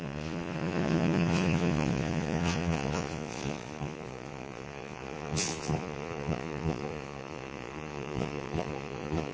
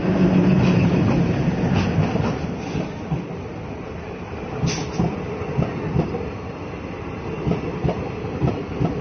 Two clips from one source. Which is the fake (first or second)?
first